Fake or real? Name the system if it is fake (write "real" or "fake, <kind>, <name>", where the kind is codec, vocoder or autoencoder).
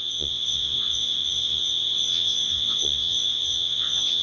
fake, vocoder, WaveNeXt